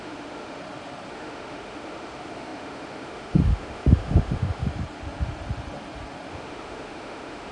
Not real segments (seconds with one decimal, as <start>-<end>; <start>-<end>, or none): 0.0-0.6; 1.1-4.7; 6.3-7.5